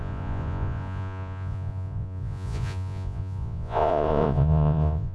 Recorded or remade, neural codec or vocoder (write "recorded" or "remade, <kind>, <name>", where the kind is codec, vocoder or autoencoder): remade, vocoder, Vocos